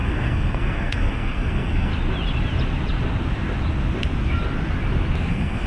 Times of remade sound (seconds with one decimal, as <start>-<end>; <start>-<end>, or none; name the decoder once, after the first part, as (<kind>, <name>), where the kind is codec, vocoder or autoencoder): 0.0-1.9 (codec, SNAC); 5.3-5.7